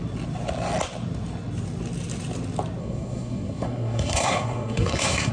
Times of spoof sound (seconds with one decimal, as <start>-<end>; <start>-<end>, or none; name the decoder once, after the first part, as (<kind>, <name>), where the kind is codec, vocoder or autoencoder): 2.8-5.3 (codec, SNAC)